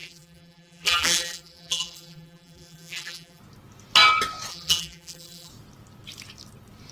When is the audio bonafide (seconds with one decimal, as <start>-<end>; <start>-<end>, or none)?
3.4-4.5; 5.5-6.9